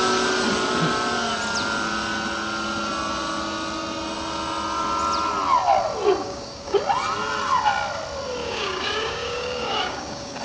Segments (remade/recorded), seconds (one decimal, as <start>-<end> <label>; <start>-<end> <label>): 0.0-6.2 recorded; 6.2-6.8 remade; 6.8-8.4 recorded; 8.4-10.4 remade